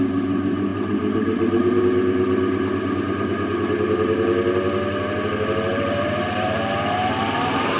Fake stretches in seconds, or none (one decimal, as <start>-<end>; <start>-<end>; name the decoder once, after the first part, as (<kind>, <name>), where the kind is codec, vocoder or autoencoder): 0.7-1.8 (vocoder, BigVGAN v2); 5.7-6.7